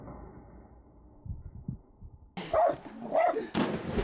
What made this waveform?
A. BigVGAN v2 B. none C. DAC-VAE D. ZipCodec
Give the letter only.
B